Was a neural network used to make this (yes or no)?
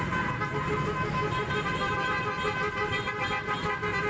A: no